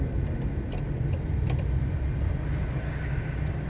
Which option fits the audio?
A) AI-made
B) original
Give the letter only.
B